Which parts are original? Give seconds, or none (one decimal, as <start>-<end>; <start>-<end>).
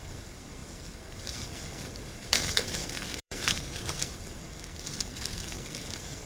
none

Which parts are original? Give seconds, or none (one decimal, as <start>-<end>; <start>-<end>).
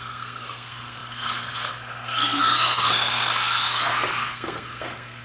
none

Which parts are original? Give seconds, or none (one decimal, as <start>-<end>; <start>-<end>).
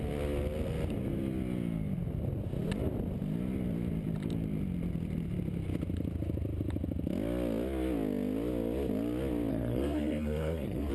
0.0-9.5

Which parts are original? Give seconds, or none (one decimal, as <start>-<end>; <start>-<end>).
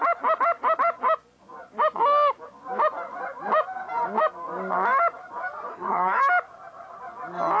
0.0-5.7; 6.2-7.6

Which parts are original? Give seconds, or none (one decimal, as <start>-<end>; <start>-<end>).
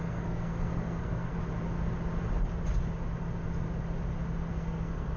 1.4-4.5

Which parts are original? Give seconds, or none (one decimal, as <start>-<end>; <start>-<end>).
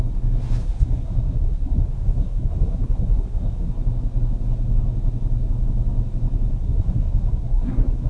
0.0-0.6; 3.7-6.5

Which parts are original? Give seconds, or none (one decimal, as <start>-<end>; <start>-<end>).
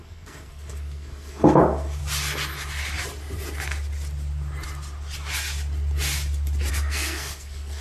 2.0-6.7